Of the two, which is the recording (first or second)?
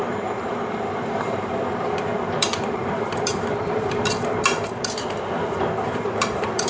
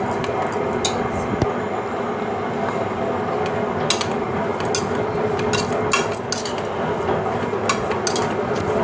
second